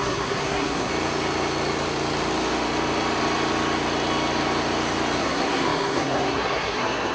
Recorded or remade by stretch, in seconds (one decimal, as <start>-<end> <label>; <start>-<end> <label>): 0.0-0.9 remade; 0.9-5.2 recorded; 5.2-7.1 remade